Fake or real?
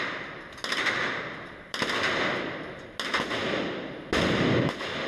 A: real